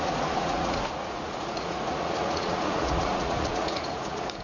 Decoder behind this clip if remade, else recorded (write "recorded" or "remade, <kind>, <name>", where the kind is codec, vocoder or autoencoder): remade, vocoder, Vocos